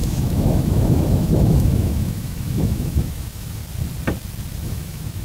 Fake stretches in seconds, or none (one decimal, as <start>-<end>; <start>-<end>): 0.0-3.6; 4.6-5.2